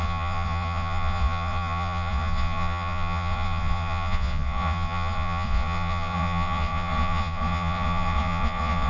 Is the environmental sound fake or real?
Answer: fake